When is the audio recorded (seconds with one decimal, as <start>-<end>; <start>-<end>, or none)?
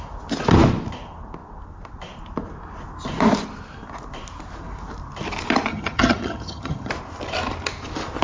0.0-5.7; 6.9-8.2